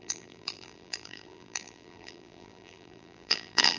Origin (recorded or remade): remade